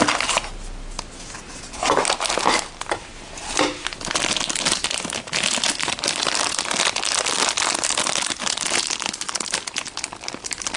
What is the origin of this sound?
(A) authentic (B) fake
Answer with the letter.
A